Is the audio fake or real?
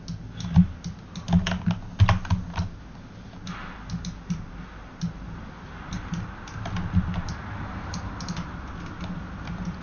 real